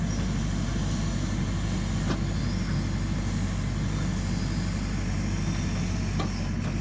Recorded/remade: recorded